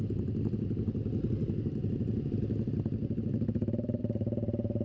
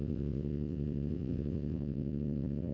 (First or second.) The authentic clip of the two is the first